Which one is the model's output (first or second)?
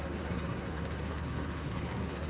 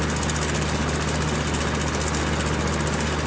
first